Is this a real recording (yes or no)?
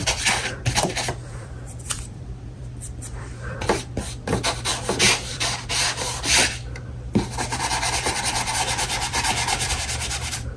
no